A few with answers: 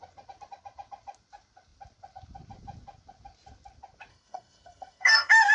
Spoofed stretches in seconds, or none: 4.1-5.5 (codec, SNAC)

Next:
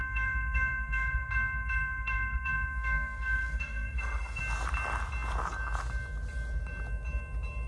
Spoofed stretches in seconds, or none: 0.0-4.4 (codec, SNAC)

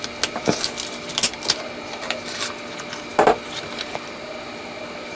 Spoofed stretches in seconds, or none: none

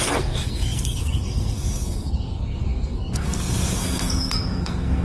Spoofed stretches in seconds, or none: 0.0-5.0 (codec, SNAC)

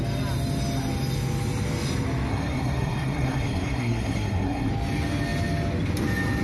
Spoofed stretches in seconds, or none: 2.3-4.7 (codec, SNAC)

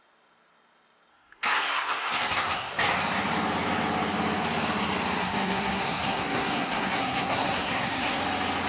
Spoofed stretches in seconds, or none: 1.1-2.7 (codec, SNAC); 5.2-8.2

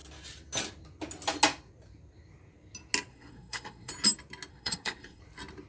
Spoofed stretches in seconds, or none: 3.1-3.9 (codec, SNAC); 4.5-5.2

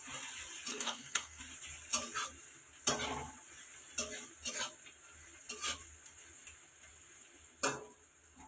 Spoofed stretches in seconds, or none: 0.7-1.4 (codec, SNAC)